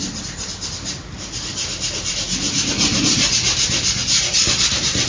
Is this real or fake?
real